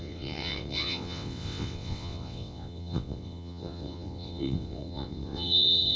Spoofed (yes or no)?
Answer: yes